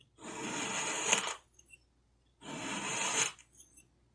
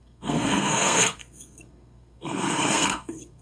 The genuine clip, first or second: first